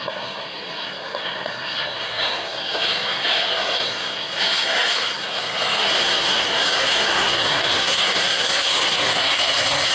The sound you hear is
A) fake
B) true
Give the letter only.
A